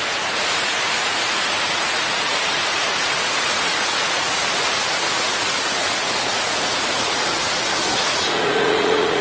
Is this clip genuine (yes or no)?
no